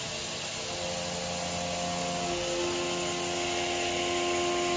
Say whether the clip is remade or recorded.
recorded